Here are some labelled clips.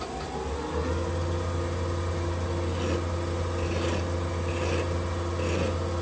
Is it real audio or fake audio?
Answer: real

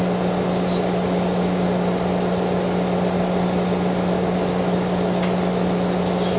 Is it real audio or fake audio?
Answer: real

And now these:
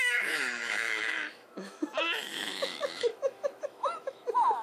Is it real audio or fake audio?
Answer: fake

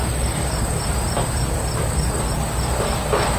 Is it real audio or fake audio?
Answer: real